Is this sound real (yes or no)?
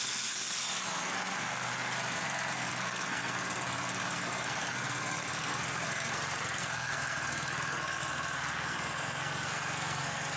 no